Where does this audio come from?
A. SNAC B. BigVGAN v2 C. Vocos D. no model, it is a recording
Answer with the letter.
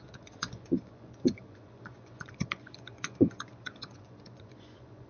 C